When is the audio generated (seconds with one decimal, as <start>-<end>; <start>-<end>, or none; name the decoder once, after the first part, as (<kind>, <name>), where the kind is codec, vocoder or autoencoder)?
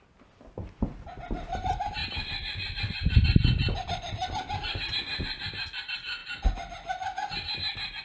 none